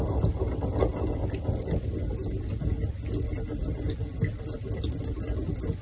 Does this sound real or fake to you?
real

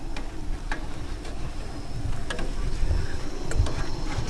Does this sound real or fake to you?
real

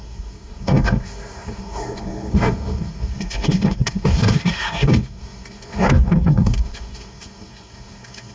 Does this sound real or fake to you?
fake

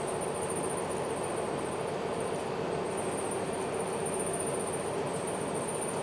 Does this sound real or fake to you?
real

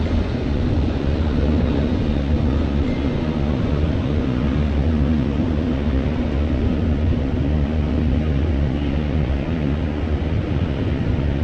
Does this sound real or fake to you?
fake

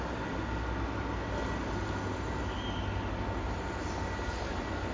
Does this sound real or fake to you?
real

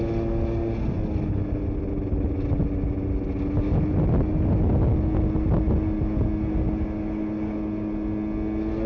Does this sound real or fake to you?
real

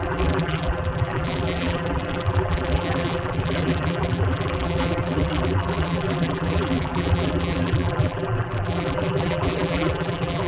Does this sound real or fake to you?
fake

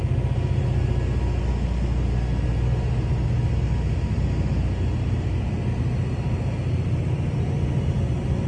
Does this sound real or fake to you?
real